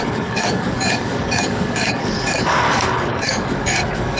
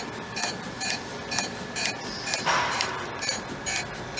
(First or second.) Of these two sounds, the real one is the second